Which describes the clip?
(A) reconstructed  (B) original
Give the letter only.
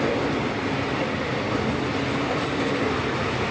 B